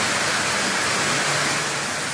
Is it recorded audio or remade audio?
recorded